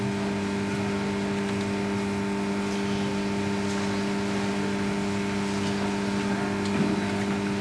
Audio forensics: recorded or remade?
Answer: recorded